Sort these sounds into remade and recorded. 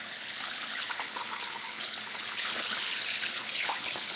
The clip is remade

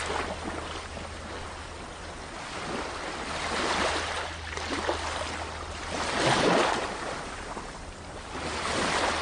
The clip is recorded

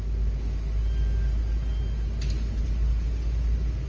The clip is recorded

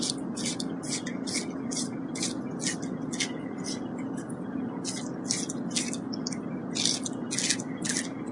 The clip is recorded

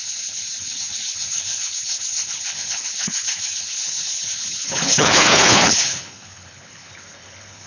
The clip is remade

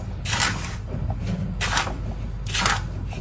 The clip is recorded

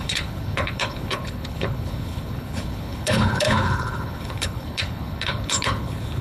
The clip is remade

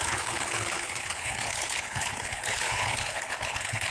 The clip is remade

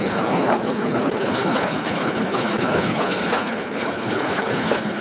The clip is remade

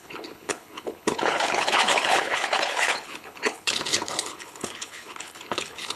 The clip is remade